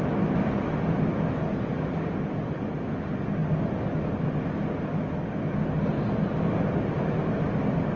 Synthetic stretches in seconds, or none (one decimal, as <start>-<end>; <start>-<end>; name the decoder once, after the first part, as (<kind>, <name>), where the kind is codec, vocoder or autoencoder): none